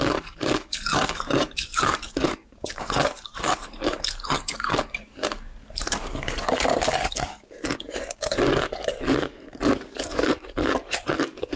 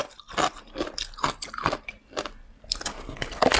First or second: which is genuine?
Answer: second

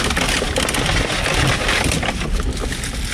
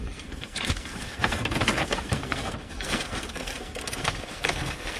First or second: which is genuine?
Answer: first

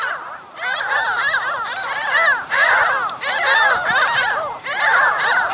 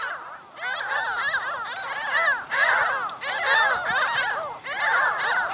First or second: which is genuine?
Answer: second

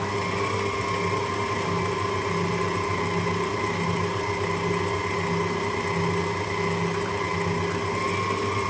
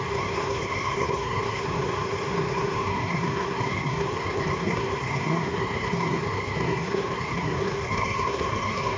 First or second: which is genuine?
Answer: first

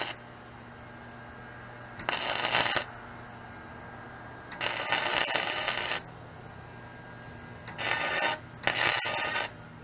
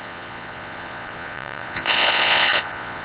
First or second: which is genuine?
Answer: first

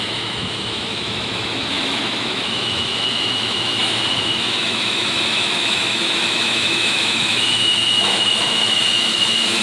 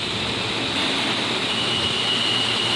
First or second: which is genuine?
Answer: second